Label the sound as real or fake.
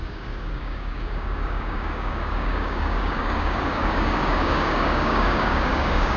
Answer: fake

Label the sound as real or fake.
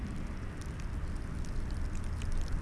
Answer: real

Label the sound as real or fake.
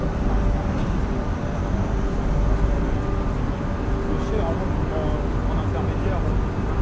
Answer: real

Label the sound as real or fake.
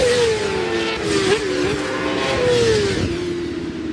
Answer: real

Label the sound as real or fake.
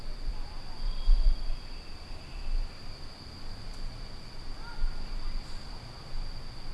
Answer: real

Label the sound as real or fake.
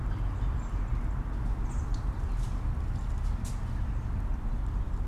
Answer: real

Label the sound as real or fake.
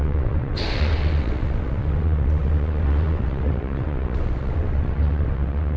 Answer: fake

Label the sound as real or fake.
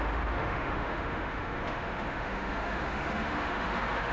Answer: fake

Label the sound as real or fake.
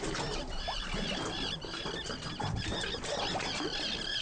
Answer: real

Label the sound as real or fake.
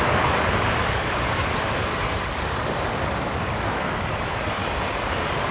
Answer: fake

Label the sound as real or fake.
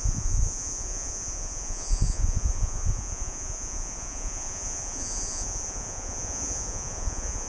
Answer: fake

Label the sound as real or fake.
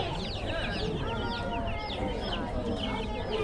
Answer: real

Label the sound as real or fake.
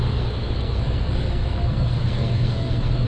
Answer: fake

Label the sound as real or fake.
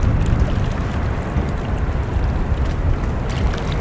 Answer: real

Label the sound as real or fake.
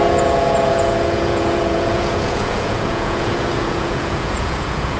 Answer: fake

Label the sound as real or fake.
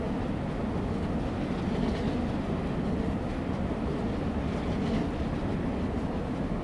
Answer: real